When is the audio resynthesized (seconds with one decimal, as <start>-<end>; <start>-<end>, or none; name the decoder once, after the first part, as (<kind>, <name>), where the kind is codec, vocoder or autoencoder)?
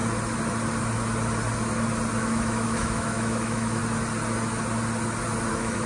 2.2-3.8 (autoencoder, DAC-VAE); 5.5-5.9